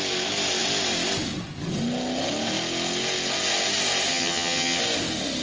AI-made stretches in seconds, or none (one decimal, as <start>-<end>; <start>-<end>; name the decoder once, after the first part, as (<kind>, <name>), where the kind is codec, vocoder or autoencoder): 4.1-4.8 (vocoder, HiFi-GAN)